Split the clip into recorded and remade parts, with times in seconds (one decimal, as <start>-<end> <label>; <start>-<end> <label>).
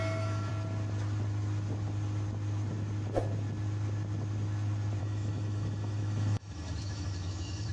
0.0-0.5 remade; 0.5-5.0 recorded; 5.0-7.7 remade